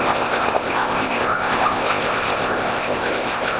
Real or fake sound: fake